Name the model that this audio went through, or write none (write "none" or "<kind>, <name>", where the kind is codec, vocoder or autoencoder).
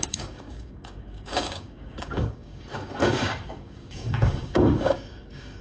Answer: codec, DAC